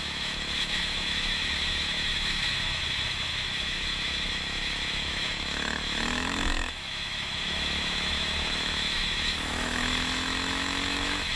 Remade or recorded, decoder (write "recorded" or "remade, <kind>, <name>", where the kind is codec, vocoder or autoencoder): remade, autoencoder, DAC-VAE